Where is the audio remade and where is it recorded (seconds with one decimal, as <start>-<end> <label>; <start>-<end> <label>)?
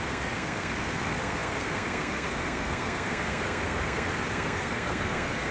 0.0-5.5 remade